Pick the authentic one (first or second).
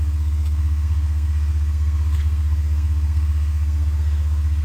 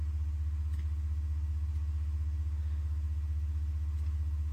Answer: second